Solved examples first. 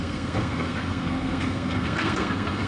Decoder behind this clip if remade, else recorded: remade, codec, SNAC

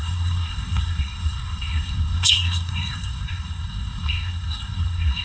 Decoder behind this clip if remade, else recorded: remade, codec, SNAC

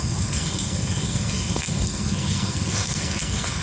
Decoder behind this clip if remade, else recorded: remade, codec, SNAC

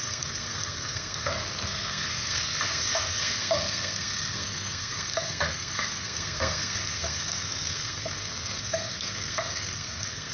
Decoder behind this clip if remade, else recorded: remade, codec, SNAC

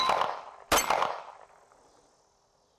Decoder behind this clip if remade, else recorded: recorded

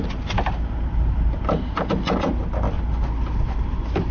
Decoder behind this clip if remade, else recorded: recorded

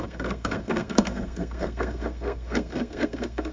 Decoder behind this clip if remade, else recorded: remade, codec, SNAC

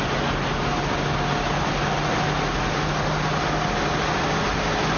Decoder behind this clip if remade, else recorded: recorded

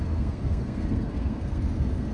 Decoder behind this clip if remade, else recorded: remade, codec, SNAC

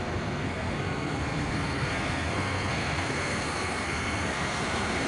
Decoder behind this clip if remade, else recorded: remade, codec, SNAC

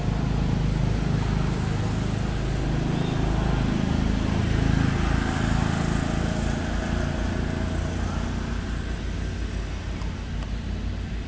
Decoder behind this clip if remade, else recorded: recorded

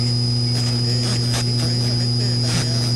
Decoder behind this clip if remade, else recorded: recorded